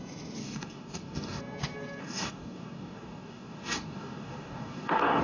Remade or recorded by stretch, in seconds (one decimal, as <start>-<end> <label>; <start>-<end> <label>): 0.0-0.4 recorded; 0.4-1.4 remade; 1.4-2.0 recorded; 2.0-5.2 remade